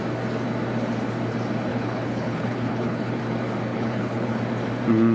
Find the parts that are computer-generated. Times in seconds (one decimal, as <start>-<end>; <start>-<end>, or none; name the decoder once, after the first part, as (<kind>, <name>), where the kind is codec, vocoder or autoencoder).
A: 1.7-3.2 (codec, HILCodec); 3.7-4.4